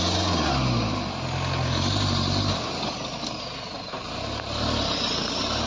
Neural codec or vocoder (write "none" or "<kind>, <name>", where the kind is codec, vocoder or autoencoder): none